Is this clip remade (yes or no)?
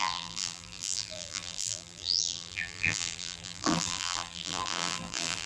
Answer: yes